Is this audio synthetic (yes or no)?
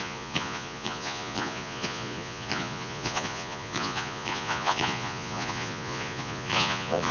yes